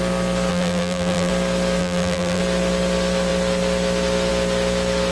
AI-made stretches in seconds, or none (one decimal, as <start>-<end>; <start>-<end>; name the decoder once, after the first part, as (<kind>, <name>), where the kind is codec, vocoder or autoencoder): 0.5-1.3 (vocoder, BigVGAN v2); 1.8-2.4